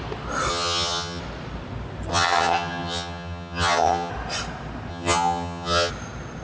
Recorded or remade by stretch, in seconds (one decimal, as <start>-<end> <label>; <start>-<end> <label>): 0.0-0.5 recorded; 0.5-1.2 remade; 1.2-2.1 recorded; 2.1-4.1 remade; 4.1-4.9 recorded; 4.9-5.9 remade; 5.9-6.4 recorded